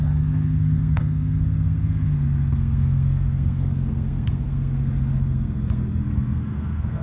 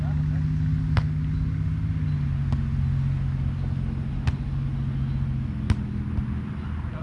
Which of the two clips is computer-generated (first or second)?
first